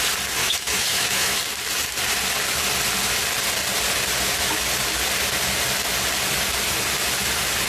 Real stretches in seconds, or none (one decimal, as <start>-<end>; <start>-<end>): 0.0-0.4; 1.4-7.7